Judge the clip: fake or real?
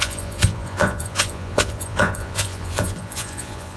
fake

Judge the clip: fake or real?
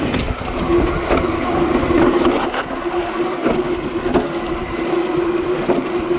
real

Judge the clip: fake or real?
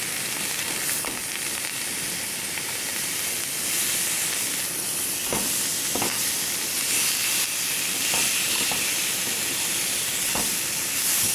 real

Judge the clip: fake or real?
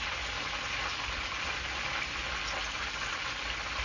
real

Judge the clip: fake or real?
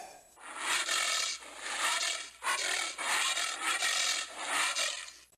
real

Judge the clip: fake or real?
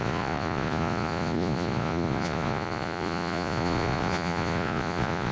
fake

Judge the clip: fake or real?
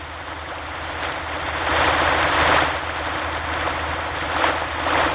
real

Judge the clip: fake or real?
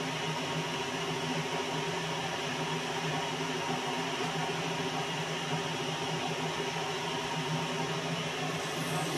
real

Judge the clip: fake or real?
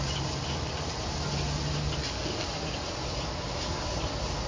real